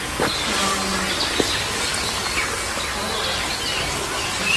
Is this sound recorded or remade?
recorded